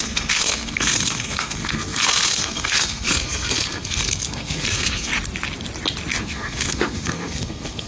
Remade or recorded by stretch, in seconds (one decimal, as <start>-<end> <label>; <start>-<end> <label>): 0.0-5.1 remade; 5.1-6.2 recorded; 6.2-7.9 remade